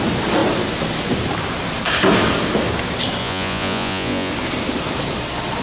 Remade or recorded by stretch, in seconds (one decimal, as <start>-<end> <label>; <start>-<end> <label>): 0.0-3.2 recorded; 3.2-4.3 remade; 4.3-5.6 recorded